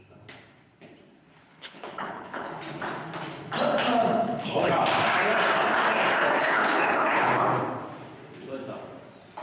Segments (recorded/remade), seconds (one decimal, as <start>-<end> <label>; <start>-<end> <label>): 0.0-1.5 recorded; 1.5-2.5 remade; 2.5-4.1 recorded; 4.1-4.7 remade; 4.7-6.4 recorded; 6.4-7.3 remade; 7.3-9.4 recorded